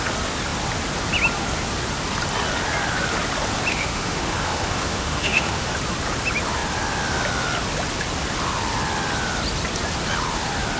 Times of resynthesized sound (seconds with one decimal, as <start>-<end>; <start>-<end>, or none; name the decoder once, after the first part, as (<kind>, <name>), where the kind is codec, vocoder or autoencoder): 3.7-5.7 (autoencoder, DAC-VAE)